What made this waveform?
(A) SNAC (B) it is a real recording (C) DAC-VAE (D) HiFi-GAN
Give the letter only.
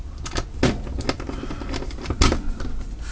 B